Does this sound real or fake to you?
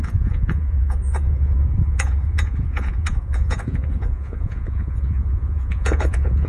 fake